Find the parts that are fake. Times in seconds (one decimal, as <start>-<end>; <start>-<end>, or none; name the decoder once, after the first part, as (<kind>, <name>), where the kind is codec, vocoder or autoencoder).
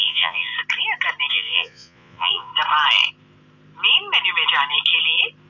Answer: 0.0-0.5 (vocoder, Vocos); 1.3-2.5